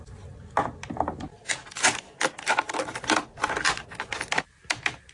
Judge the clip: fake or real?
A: real